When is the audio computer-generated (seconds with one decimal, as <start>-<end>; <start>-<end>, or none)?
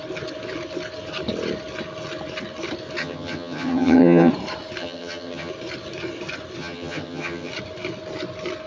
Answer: 3.0-4.3; 4.8-5.5; 6.6-7.5